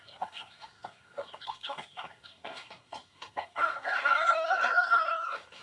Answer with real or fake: fake